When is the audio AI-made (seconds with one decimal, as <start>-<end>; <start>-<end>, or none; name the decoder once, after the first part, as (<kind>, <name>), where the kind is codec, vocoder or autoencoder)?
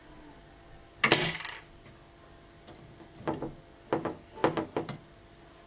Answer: none